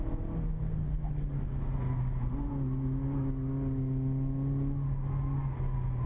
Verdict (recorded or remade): recorded